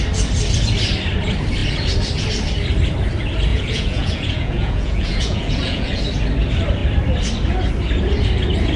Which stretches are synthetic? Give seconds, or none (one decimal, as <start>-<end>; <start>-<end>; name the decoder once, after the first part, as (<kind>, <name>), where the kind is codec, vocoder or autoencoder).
3.5-6.0 (vocoder, Vocos)